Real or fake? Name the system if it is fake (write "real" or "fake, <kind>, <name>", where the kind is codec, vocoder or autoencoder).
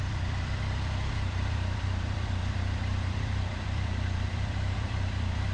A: fake, vocoder, BigVGAN v2